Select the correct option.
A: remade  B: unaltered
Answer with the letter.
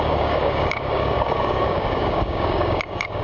A